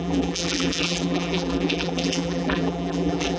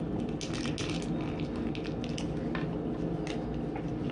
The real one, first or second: second